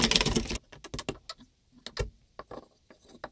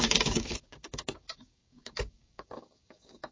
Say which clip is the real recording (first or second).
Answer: first